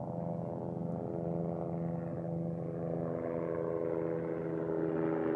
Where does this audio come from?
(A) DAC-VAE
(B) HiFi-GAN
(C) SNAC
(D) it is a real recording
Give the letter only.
D